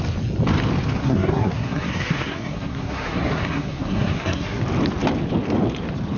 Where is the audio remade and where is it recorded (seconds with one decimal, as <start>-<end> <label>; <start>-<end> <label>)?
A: 0.0-1.0 recorded; 1.0-4.6 remade; 4.6-6.2 recorded

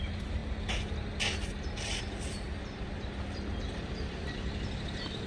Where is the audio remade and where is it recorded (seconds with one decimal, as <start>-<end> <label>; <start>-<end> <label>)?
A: 0.0-0.4 remade; 0.4-3.6 recorded; 3.6-5.3 remade

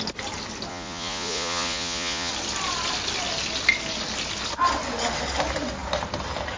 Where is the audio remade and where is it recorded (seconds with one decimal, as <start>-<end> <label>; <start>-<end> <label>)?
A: 0.0-0.7 recorded; 0.7-2.3 remade; 2.3-6.6 recorded

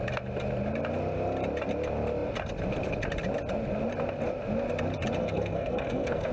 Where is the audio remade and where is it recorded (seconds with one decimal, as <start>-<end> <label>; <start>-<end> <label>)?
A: 0.0-5.2 recorded; 5.2-6.3 remade

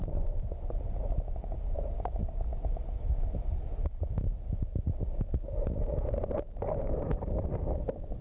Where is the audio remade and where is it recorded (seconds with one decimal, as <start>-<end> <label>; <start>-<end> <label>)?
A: 0.0-2.2 remade; 2.2-7.1 recorded; 7.1-8.2 remade

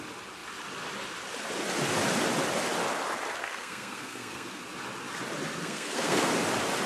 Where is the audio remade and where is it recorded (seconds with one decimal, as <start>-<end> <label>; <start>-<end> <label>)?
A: 0.0-3.4 recorded; 3.4-4.6 remade; 4.6-5.6 recorded; 5.6-6.3 remade; 6.3-6.9 recorded

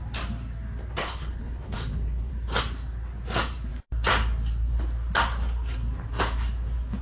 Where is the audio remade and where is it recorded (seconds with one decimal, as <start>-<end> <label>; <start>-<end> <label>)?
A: 0.0-1.0 recorded; 1.0-2.3 remade; 2.3-7.0 recorded